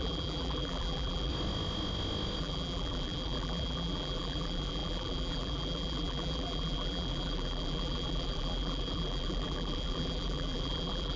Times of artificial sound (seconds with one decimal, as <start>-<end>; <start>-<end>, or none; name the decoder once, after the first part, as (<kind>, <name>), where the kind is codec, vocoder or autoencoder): 0.0-1.3 (vocoder, BigVGAN v2); 2.4-11.2